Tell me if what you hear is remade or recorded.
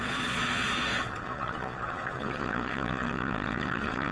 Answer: remade